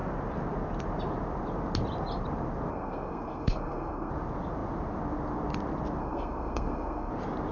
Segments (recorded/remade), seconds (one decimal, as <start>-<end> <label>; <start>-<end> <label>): 0.0-2.7 recorded; 2.7-4.1 remade; 4.1-6.0 recorded; 6.0-7.1 remade; 7.1-7.5 recorded